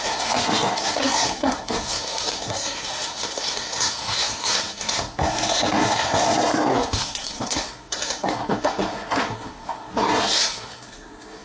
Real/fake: fake